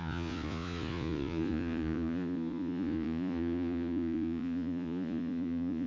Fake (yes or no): yes